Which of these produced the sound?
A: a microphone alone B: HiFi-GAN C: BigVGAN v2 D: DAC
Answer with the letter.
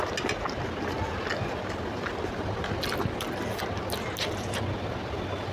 A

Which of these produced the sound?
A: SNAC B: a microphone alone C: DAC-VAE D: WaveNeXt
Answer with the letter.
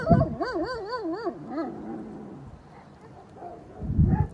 B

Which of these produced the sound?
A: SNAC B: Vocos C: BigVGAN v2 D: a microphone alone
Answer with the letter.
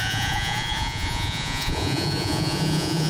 B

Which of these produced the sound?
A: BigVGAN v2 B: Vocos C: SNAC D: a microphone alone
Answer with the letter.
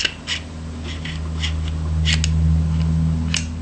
D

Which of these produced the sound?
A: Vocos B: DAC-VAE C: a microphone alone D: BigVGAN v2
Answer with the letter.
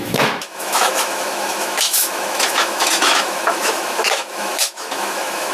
B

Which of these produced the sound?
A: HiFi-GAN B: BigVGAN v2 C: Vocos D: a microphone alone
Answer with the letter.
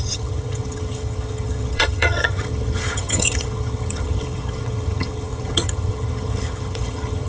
A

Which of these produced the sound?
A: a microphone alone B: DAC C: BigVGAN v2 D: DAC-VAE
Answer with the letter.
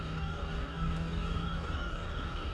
B